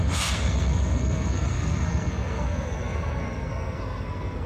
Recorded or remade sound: remade